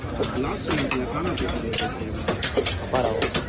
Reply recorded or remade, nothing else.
recorded